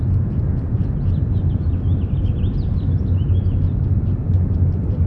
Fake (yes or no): no